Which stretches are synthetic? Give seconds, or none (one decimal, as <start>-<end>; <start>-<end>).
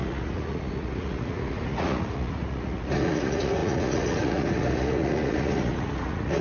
0.0-6.4